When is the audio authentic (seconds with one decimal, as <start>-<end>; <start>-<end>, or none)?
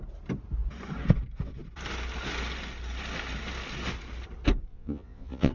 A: 0.0-4.7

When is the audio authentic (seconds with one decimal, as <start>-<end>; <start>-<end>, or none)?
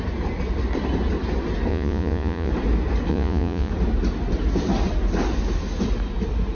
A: 0.0-1.7; 2.5-3.1; 3.7-6.5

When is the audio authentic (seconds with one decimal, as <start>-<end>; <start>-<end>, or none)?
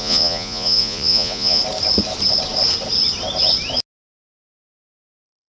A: 1.6-4.5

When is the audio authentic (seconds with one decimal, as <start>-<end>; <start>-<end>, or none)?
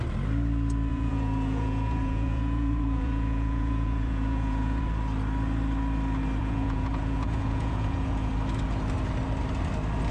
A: 0.0-0.9; 4.8-6.4; 8.3-10.1